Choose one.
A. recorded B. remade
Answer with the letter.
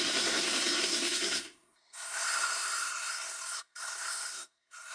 B